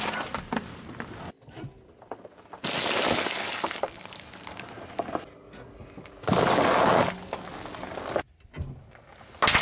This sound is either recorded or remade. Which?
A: recorded